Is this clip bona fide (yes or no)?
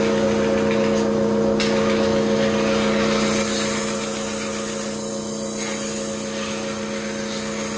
yes